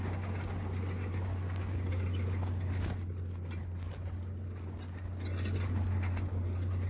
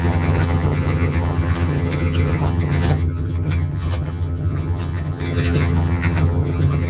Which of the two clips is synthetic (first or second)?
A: second